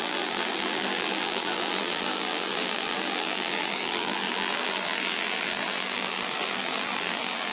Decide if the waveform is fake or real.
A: fake